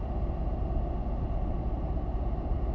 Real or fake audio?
real